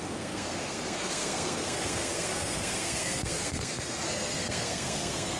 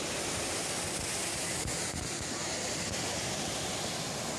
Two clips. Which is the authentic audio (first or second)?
second